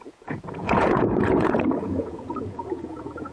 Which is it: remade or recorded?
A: remade